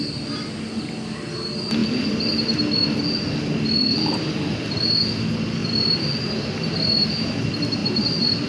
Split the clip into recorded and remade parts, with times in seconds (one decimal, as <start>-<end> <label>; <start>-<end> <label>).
0.0-7.8 recorded; 7.8-8.5 remade

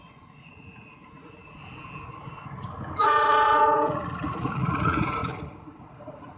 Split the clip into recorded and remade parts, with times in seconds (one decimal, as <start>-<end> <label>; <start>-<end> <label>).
0.0-1.6 remade; 1.6-3.0 recorded; 3.0-6.4 remade

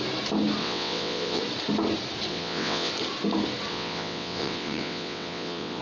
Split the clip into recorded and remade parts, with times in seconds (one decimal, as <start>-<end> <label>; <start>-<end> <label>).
0.0-0.6 recorded; 0.6-1.4 remade; 1.4-2.3 recorded; 2.3-2.9 remade; 2.9-3.7 recorded; 3.7-5.8 remade